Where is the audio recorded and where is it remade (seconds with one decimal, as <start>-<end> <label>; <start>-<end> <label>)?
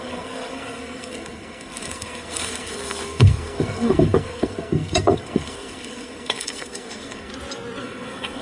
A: 0.0-7.3 remade; 7.3-7.8 recorded; 7.8-8.4 remade